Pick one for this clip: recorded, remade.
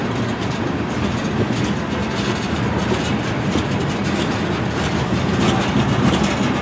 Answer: recorded